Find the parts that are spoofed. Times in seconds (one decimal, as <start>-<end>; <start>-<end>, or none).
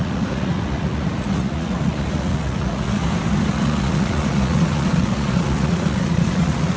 0.0-3.0; 3.5-6.8